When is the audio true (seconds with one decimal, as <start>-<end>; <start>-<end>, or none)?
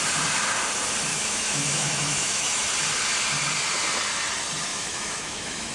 0.0-1.1; 2.7-4.7